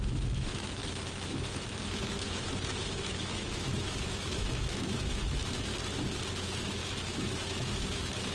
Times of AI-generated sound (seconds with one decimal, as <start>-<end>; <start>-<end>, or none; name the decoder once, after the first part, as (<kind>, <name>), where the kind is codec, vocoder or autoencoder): 0.0-5.7 (autoencoder, DAC-VAE); 6.3-8.3